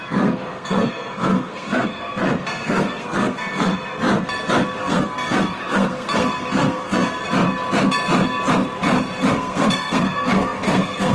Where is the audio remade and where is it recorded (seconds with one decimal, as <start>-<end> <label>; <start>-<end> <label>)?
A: 0.0-4.1 remade; 4.1-4.8 recorded; 4.8-7.2 remade; 7.2-9.3 recorded; 9.3-11.1 remade